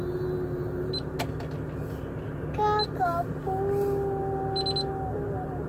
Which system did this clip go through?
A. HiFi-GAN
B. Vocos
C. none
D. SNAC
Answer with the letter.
C